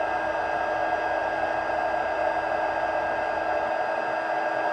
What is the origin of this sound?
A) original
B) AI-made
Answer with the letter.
A